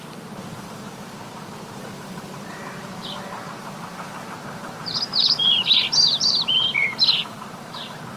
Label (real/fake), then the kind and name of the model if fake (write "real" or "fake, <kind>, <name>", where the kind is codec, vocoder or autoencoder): fake, vocoder, BigVGAN v2